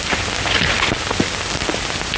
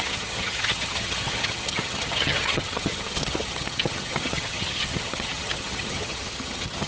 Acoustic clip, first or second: first